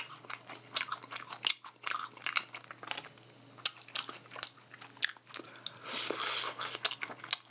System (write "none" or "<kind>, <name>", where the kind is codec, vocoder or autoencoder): none